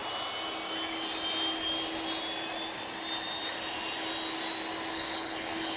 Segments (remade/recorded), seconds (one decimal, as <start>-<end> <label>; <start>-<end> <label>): 0.0-4.9 recorded; 4.9-5.8 remade